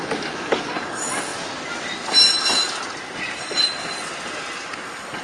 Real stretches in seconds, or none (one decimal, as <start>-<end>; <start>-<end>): 0.0-5.2